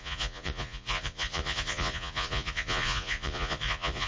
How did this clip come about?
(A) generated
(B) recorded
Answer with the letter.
A